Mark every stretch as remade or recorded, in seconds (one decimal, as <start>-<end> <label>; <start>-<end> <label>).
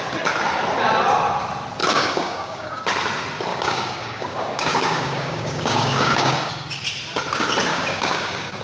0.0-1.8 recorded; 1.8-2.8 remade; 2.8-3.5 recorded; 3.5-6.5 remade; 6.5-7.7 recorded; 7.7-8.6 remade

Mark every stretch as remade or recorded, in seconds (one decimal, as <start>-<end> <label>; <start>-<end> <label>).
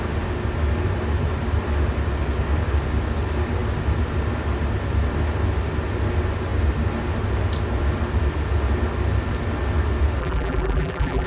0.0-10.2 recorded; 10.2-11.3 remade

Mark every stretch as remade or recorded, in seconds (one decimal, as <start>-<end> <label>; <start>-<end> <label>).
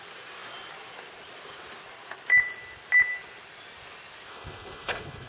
0.0-4.3 recorded; 4.3-5.3 remade